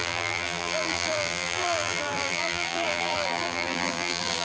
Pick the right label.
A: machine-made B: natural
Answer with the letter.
A